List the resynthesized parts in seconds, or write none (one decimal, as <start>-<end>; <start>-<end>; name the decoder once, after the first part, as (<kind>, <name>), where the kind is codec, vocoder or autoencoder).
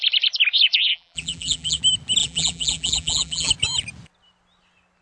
0.9-1.8 (vocoder, BigVGAN v2); 2.2-3.5